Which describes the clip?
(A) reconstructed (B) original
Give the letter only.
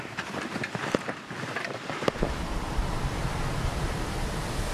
B